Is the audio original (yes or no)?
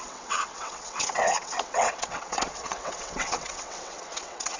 no